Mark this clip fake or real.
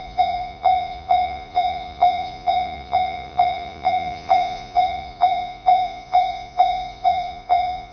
fake